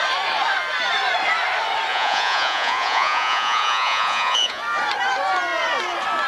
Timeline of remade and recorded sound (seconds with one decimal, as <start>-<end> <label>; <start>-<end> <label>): 0.0-1.9 recorded; 1.9-4.6 remade; 4.6-6.3 recorded